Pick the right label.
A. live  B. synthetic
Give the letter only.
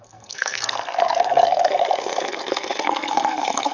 B